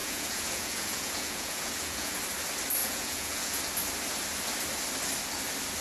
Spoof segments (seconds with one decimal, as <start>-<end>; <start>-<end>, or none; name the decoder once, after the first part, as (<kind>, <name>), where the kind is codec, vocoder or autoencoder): 0.0-2.2 (vocoder, Vocos); 2.8-3.6